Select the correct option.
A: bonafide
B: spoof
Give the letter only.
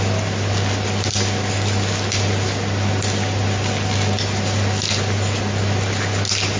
A